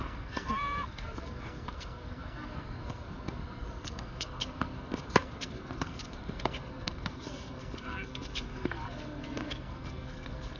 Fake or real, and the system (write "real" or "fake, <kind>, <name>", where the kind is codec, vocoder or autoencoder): fake, codec, SNAC